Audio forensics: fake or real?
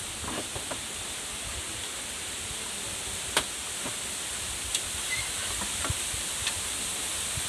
real